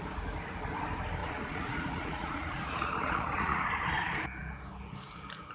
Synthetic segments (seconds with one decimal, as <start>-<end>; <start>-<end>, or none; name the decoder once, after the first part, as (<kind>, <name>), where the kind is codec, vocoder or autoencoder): 1.2-3.7 (vocoder, Vocos)